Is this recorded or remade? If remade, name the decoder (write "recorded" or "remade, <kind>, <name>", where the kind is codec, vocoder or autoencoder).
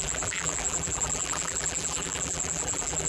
remade, vocoder, BigVGAN v2